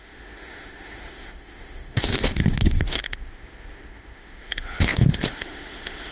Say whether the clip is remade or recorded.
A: remade